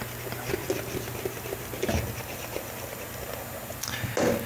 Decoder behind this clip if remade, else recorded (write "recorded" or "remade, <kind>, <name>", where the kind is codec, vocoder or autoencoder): recorded